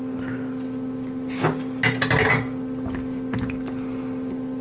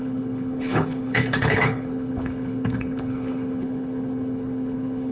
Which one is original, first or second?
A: first